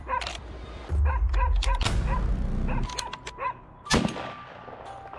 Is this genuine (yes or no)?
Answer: yes